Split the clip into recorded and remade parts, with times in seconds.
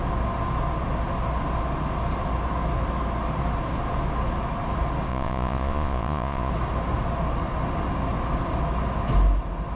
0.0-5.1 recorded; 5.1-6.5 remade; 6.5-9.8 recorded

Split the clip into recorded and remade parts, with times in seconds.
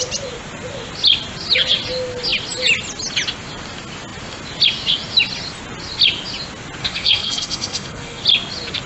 0.0-6.8 recorded; 6.8-8.2 remade; 8.2-8.9 recorded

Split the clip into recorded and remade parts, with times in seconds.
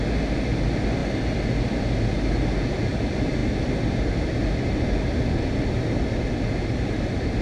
0.0-7.4 recorded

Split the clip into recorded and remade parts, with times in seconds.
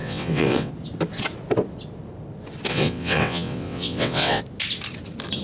0.0-0.7 remade; 0.7-2.7 recorded; 2.7-4.4 remade; 4.4-5.4 recorded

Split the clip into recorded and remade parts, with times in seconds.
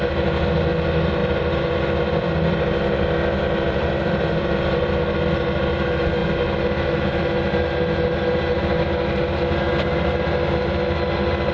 0.0-1.2 recorded; 1.2-4.9 remade; 4.9-11.5 recorded